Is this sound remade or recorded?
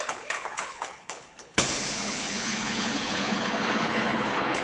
remade